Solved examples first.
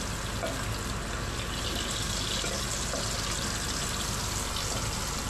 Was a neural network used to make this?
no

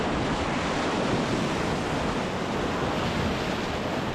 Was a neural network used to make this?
no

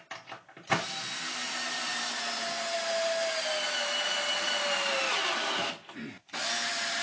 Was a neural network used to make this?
no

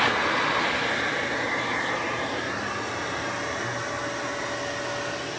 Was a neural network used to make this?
no